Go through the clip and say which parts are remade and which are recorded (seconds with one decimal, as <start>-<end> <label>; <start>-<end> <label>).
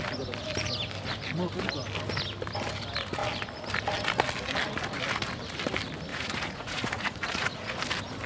0.0-6.1 recorded; 6.1-7.8 remade; 7.8-8.3 recorded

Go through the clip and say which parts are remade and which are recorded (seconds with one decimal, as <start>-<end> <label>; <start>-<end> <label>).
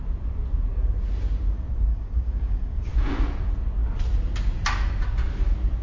0.0-1.9 recorded; 1.9-2.9 remade; 2.9-5.8 recorded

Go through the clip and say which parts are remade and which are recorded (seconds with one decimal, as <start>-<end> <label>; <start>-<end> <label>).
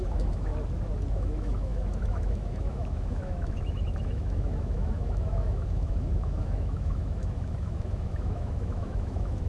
0.0-0.5 remade; 0.5-1.1 recorded; 1.1-9.5 remade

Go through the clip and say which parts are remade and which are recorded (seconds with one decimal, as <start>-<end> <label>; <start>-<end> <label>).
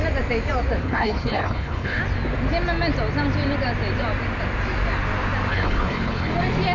0.0-0.8 recorded; 0.8-2.0 remade; 2.0-5.5 recorded; 5.5-6.3 remade; 6.3-6.7 recorded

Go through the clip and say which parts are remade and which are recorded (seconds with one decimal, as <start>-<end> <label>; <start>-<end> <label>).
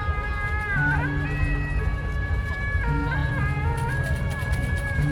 0.0-5.1 recorded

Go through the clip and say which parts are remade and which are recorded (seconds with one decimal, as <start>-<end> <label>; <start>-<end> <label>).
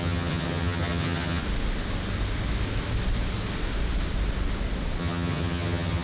0.0-1.4 remade; 1.4-5.0 recorded; 5.0-6.0 remade